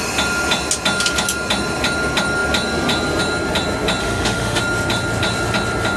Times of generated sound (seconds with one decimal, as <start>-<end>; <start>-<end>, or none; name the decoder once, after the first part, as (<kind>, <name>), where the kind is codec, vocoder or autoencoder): 4.0-4.6 (autoencoder, DAC-VAE)